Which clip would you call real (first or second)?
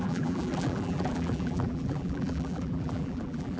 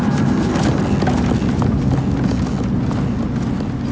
second